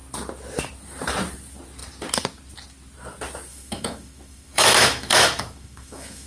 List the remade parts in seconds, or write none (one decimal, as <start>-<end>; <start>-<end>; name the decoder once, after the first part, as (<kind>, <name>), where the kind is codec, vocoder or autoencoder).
3.5-6.3 (autoencoder, DAC-VAE)